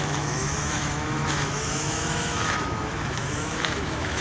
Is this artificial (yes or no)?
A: yes